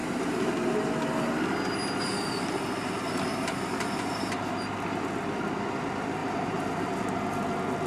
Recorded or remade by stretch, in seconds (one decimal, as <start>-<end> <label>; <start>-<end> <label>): 0.0-0.9 remade; 0.9-3.3 recorded; 3.3-4.5 remade; 4.5-6.2 recorded; 6.2-7.1 remade; 7.1-7.9 recorded